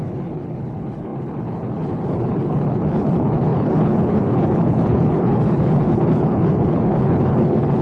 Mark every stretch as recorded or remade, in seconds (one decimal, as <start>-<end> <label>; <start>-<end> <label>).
0.0-7.8 remade